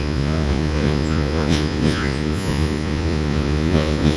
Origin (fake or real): fake